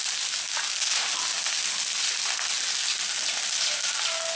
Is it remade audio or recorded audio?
recorded